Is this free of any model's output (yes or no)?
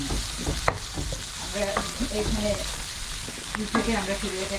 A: yes